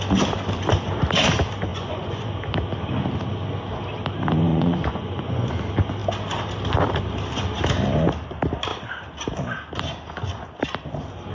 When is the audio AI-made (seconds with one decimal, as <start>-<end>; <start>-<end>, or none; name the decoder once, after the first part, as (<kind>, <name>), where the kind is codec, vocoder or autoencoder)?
1.7-2.3 (vocoder, Vocos); 4.5-5.5